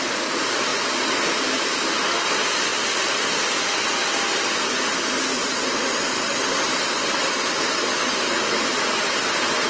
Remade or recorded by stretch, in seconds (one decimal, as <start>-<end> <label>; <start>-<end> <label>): 0.0-9.7 remade